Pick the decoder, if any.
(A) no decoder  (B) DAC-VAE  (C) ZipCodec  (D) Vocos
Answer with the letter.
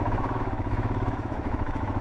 B